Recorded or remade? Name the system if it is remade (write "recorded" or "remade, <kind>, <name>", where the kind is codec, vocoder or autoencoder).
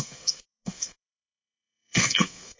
remade, codec, SNAC